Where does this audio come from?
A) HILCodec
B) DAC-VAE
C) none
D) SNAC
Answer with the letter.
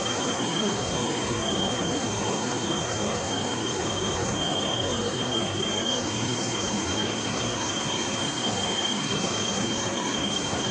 D